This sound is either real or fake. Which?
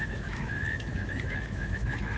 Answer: fake